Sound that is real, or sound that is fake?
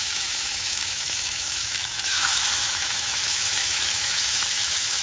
fake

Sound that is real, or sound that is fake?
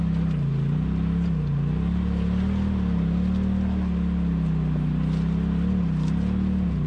real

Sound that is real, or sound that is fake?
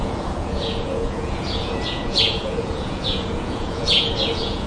fake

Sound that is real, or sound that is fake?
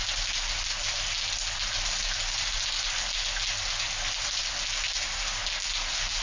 real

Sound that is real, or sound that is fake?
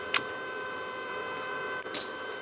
fake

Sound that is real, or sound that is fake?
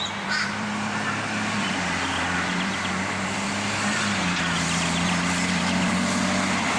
fake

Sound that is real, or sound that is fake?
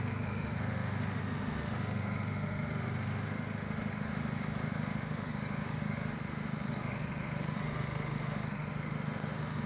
fake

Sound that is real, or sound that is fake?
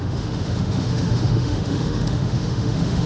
fake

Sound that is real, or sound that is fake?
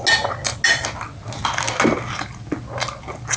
real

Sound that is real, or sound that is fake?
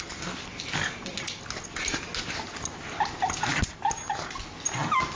real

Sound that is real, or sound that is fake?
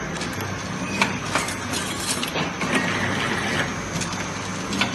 real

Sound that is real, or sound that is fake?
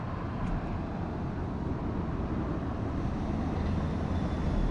real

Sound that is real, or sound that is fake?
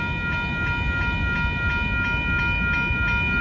real